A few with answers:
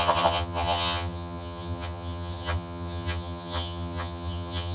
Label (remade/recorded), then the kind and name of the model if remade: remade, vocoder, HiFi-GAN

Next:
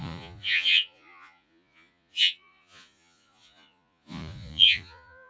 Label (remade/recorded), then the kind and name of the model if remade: remade, vocoder, Vocos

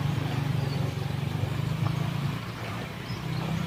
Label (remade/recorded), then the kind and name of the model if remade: remade, vocoder, BigVGAN v2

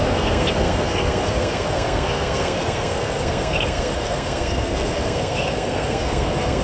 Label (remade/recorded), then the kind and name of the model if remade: remade, codec, SNAC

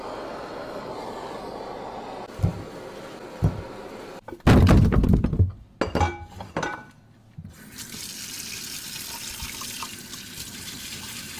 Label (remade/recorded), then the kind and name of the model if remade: recorded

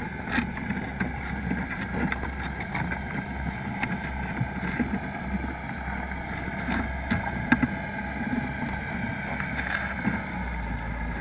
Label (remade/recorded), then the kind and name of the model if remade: recorded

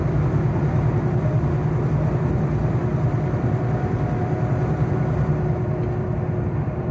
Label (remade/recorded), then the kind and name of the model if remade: remade, vocoder, BigVGAN v2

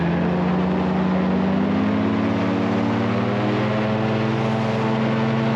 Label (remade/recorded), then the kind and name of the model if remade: recorded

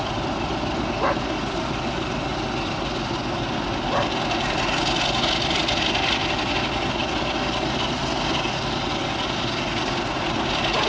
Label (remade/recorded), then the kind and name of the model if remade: recorded